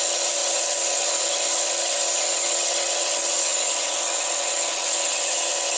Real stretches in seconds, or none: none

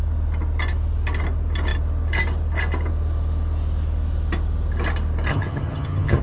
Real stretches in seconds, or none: 0.0-5.3

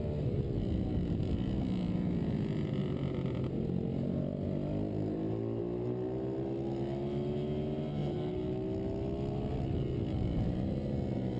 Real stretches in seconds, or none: 0.0-11.4

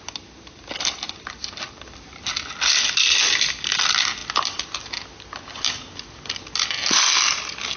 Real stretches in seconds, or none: 0.0-7.8